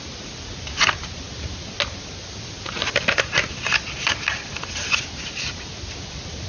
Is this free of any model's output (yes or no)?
yes